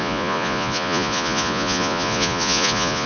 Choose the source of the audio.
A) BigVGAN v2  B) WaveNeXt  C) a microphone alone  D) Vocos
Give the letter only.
D